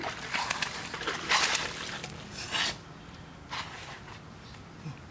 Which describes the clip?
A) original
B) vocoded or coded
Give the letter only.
A